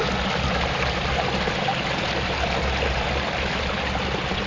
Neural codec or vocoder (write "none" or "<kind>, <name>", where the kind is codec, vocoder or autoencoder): none